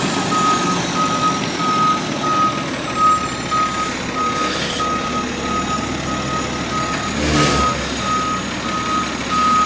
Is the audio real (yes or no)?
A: yes